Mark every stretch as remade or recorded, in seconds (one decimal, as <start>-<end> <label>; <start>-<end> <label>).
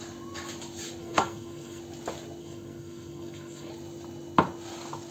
0.0-1.0 recorded; 1.0-1.8 remade; 1.8-2.4 recorded; 2.4-3.7 remade; 3.7-5.1 recorded